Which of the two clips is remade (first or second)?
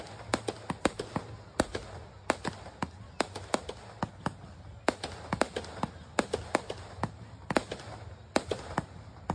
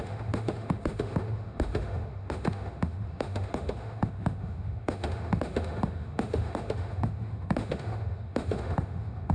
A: second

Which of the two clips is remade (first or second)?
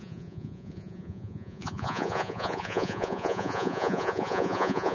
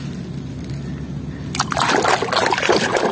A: first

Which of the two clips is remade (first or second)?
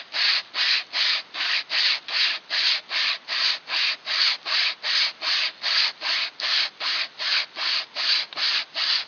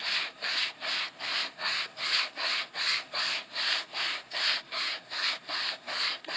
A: second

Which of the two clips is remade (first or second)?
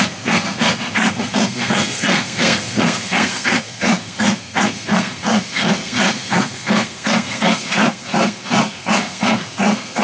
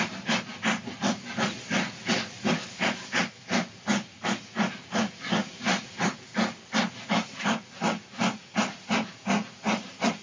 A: first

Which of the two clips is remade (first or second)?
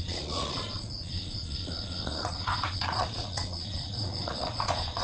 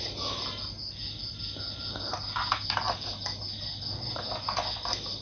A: first